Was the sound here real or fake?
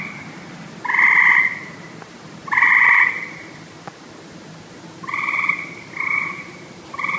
fake